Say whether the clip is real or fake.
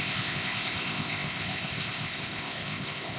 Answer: fake